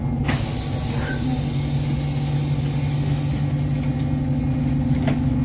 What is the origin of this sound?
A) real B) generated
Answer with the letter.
A